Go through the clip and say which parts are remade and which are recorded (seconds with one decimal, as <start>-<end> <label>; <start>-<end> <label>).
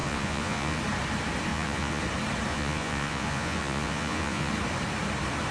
0.0-0.8 remade; 0.8-1.5 recorded; 1.5-2.0 remade; 2.0-2.5 recorded; 2.5-4.5 remade; 4.5-5.5 recorded